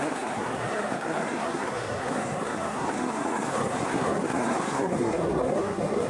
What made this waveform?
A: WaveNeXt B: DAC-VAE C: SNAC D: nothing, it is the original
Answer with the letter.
C